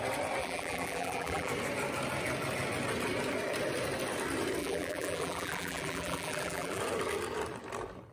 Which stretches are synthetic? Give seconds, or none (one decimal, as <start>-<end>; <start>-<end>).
0.4-1.5; 4.6-6.8